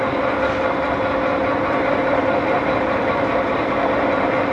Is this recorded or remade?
remade